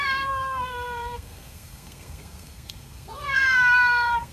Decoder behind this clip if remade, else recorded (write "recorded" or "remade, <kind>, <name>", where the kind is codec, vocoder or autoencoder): remade, codec, SNAC